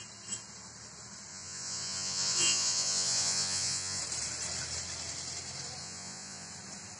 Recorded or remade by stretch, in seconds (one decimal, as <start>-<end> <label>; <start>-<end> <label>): 0.0-1.3 recorded; 1.3-4.0 remade; 4.0-5.8 recorded; 5.8-6.5 remade; 6.5-7.0 recorded